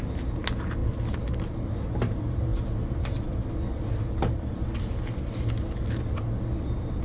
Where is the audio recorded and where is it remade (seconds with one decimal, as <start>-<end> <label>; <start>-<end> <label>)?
0.0-7.0 recorded